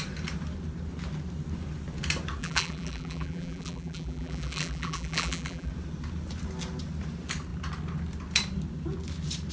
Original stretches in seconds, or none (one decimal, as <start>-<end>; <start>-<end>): 0.0-2.4; 5.7-9.5